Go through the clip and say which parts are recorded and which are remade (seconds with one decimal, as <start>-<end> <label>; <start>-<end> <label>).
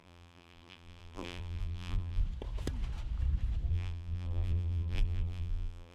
0.0-2.2 remade; 2.2-3.7 recorded; 3.7-5.9 remade